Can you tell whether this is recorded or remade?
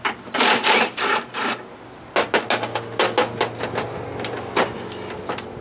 recorded